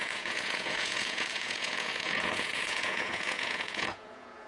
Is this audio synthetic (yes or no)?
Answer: yes